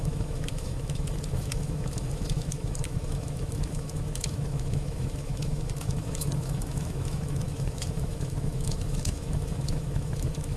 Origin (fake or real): fake